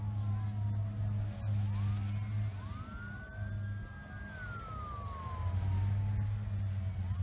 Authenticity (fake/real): real